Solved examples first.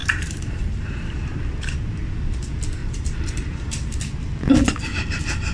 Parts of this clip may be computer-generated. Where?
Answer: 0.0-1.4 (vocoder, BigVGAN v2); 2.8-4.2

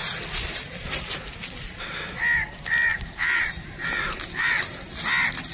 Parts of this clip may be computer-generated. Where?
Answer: 2.9-4.5 (vocoder, BigVGAN v2)